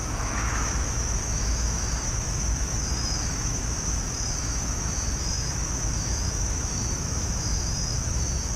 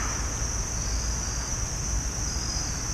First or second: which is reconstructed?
first